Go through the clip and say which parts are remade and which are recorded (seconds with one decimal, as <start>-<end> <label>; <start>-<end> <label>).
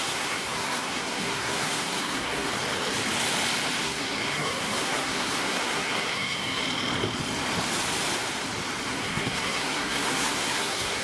0.0-2.5 remade; 2.5-3.8 recorded; 3.8-6.6 remade; 6.6-8.9 recorded; 8.9-11.0 remade